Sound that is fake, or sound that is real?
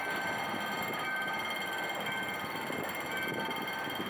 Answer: real